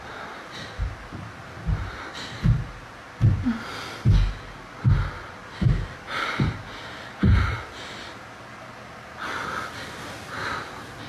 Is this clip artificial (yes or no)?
no